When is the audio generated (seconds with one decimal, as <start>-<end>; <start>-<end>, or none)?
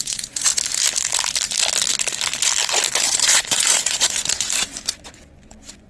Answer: 0.0-0.5; 2.9-5.9